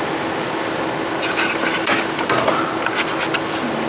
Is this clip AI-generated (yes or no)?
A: no